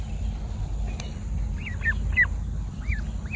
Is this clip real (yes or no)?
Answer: yes